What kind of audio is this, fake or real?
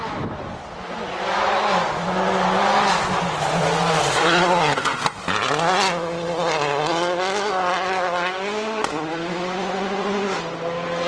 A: real